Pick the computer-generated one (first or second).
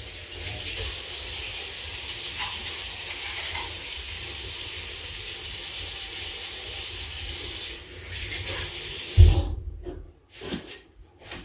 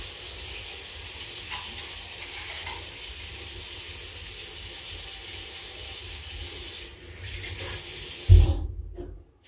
first